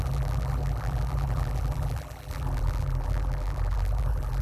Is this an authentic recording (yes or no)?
no